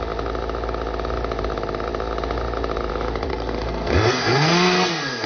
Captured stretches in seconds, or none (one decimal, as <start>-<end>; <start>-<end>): 0.0-3.3